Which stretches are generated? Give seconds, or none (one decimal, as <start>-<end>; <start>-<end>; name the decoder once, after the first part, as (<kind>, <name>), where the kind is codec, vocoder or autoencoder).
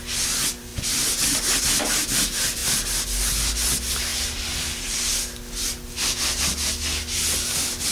4.1-5.1 (vocoder, BigVGAN v2)